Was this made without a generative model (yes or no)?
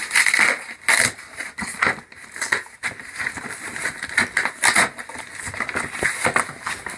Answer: yes